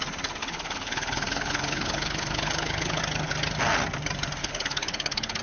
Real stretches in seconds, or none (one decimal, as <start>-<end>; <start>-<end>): 0.0-0.4; 3.0-4.4